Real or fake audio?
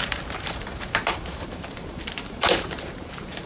fake